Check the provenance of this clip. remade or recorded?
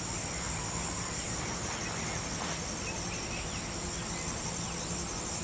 recorded